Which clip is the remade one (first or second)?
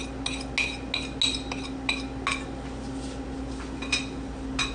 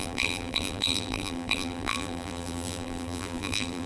second